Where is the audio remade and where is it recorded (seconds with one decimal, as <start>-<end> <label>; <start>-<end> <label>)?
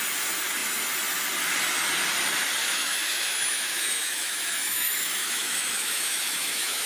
0.0-2.6 recorded; 2.6-6.9 remade